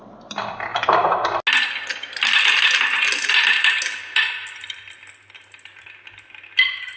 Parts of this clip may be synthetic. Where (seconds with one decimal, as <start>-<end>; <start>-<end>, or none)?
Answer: none